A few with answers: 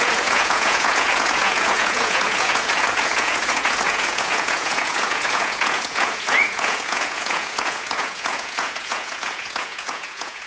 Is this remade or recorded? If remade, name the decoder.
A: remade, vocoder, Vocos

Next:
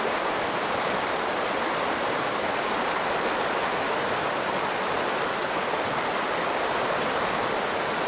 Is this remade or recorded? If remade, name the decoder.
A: recorded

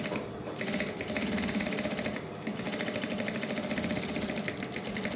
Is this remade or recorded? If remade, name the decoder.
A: recorded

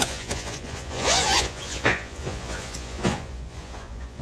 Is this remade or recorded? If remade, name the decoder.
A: remade, vocoder, Vocos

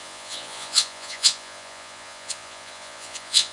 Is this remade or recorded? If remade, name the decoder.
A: remade, vocoder, Vocos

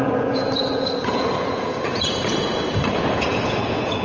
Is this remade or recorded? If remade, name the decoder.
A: remade, vocoder, Vocos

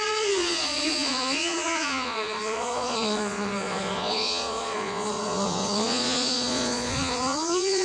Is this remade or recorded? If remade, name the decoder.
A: remade, vocoder, Vocos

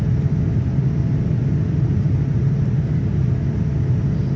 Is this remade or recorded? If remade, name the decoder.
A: recorded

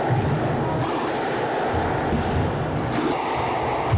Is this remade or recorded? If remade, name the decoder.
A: recorded